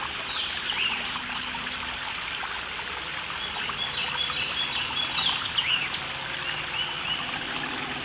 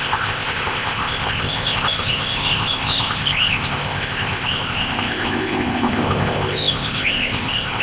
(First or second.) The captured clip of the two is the first